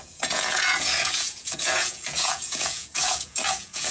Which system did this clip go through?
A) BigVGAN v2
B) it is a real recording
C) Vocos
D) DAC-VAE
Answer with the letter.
C